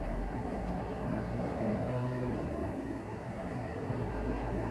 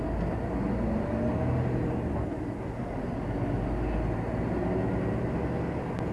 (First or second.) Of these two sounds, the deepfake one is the first